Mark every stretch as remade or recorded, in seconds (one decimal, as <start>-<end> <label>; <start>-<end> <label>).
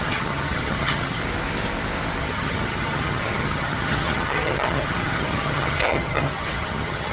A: 0.0-1.2 remade; 1.2-2.2 recorded; 2.2-7.1 remade